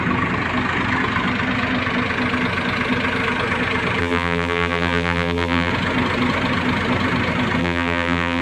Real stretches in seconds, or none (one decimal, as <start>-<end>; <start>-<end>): 0.0-4.0; 5.7-7.6